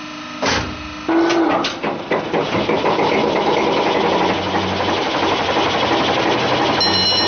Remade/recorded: recorded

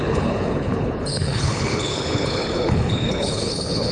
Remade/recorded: remade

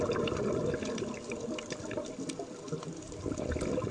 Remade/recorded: recorded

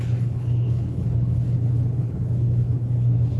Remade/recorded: remade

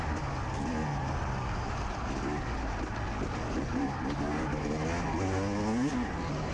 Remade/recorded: recorded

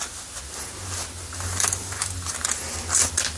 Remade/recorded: recorded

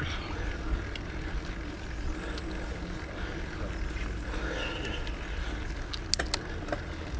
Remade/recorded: recorded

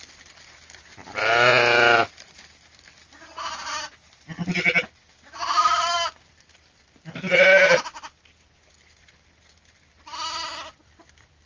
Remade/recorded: recorded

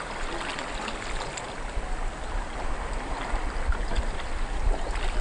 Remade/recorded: recorded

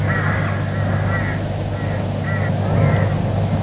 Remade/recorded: recorded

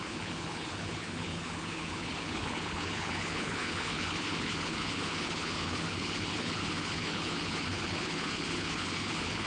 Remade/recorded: remade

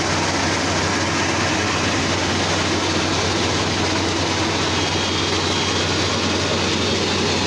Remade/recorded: recorded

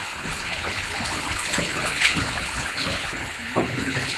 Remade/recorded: remade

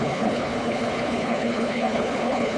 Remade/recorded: remade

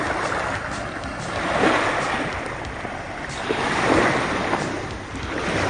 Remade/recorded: recorded